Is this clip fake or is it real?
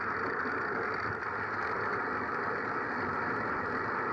real